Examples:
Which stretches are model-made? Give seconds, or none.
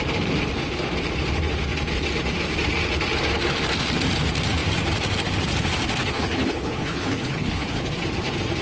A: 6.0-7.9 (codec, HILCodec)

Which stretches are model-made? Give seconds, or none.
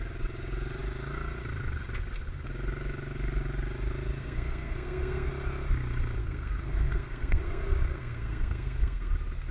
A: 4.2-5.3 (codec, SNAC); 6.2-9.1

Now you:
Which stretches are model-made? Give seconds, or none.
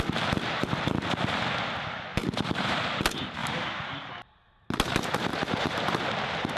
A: 2.1-3.0 (vocoder, BigVGAN v2); 3.4-4.7; 5.3-5.9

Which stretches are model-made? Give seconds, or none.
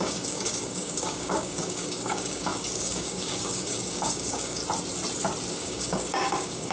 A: 0.0-4.6 (codec, DAC); 5.5-6.7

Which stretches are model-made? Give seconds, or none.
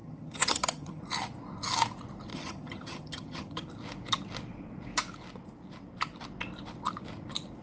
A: 0.0-1.0 (vocoder, HiFi-GAN); 2.3-3.7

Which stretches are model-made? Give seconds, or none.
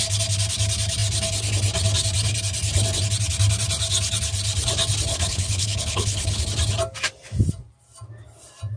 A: 5.1-6.4 (codec, HILCodec)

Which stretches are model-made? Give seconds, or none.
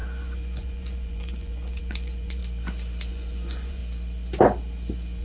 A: 0.0-2.4 (vocoder, Vocos); 3.1-3.8